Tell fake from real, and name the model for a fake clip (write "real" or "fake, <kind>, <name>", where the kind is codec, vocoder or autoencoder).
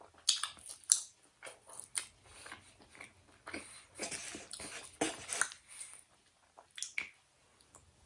real